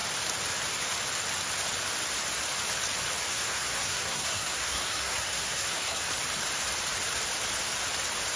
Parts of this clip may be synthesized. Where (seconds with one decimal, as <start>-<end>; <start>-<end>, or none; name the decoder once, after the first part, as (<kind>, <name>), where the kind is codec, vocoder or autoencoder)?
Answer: 3.3-6.0 (codec, SNAC)